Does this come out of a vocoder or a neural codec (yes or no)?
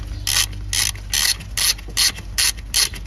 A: no